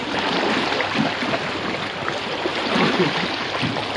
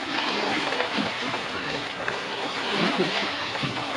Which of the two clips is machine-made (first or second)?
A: second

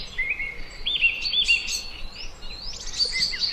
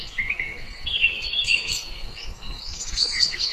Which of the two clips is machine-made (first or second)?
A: second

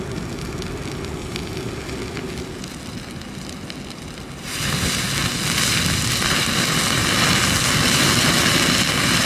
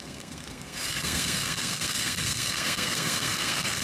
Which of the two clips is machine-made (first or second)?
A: second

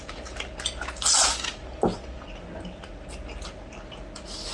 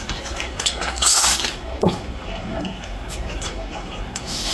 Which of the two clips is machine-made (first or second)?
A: second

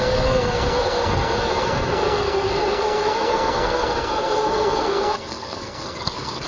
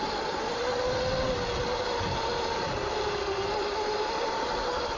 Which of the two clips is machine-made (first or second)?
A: first